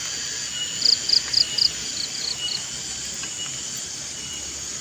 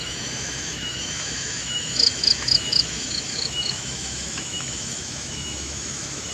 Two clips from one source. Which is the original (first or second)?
first